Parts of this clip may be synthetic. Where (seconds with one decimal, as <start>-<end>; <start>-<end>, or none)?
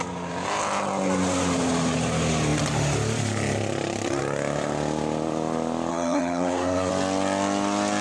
5.9-6.9